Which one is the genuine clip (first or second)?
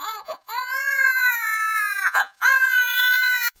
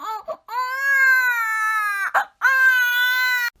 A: second